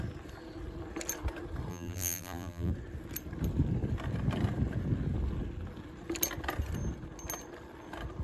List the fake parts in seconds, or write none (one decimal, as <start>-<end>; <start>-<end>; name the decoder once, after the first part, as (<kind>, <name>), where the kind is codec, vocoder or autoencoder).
1.7-2.7 (vocoder, BigVGAN v2)